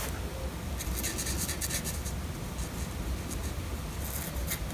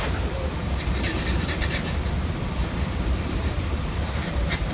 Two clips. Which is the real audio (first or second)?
first